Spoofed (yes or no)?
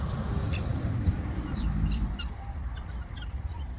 yes